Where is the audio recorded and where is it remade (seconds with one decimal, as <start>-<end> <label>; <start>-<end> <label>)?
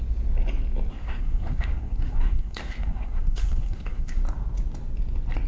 0.0-0.9 recorded; 0.9-4.2 remade; 4.2-5.5 recorded